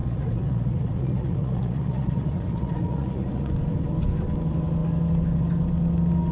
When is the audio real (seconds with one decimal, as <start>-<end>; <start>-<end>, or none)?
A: 3.5-6.3